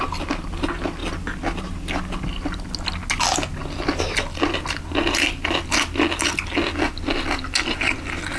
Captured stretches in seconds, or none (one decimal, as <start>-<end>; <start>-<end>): 0.0-8.4

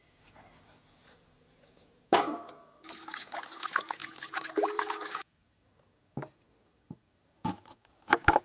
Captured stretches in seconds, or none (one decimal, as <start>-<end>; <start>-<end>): 0.0-4.0; 8.0-8.4

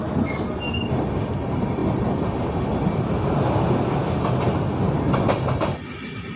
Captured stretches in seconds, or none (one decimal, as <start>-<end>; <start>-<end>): 0.0-6.4

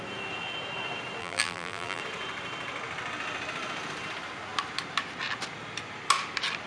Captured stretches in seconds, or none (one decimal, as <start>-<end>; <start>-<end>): 0.0-1.2; 2.0-6.7

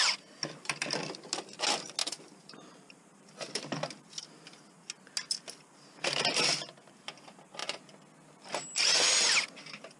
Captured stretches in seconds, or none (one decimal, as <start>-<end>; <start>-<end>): 0.0-2.0; 3.3-10.0

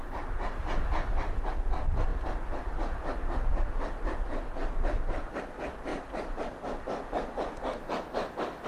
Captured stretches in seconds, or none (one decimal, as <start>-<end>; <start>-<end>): 0.8-4.6; 5.4-8.7

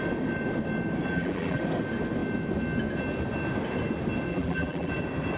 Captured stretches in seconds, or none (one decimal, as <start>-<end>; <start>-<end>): 0.0-1.1; 1.6-4.3; 4.9-5.4

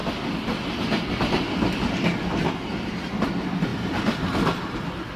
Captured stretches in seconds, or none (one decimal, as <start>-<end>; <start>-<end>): 0.0-3.7; 4.6-5.2